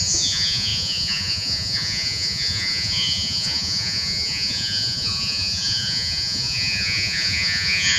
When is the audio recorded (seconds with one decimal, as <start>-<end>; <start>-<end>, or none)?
none